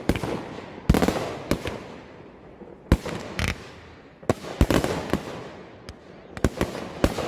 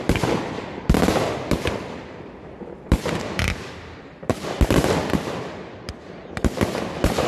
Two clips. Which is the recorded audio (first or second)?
first